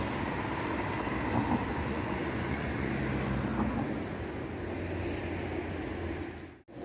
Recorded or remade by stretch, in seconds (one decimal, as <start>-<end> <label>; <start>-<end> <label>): 0.0-1.7 recorded; 1.7-2.9 remade; 2.9-6.8 recorded